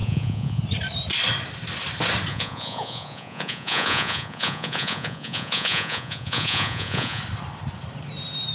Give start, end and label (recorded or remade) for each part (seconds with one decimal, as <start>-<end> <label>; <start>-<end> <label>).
0.0-0.6 remade; 0.6-2.3 recorded; 2.3-7.2 remade; 7.2-8.5 recorded

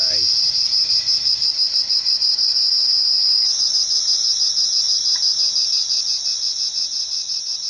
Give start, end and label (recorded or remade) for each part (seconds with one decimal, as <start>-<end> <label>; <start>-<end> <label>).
0.0-7.7 recorded

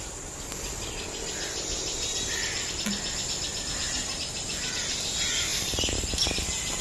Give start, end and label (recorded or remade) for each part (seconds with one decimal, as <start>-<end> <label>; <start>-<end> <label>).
0.0-5.5 recorded; 5.5-6.2 remade; 6.2-6.8 recorded